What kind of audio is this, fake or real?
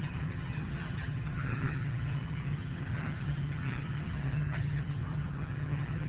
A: fake